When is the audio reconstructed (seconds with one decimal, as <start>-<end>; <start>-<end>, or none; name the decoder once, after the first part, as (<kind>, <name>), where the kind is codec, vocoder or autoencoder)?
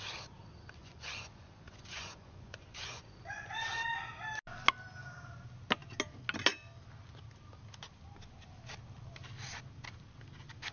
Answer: 0.8-3.5 (vocoder, Vocos)